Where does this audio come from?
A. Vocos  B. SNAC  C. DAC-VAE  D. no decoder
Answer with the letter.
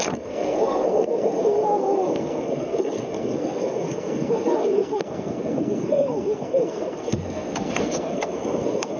B